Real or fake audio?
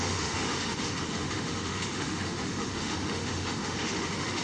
fake